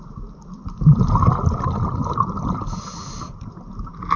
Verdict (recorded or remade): recorded